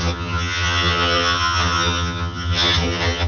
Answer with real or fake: fake